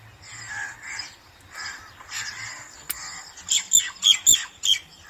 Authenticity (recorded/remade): recorded